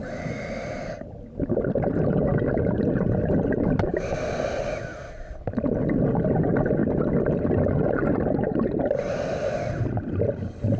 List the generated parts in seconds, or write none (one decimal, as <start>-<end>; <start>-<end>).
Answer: 0.0-1.1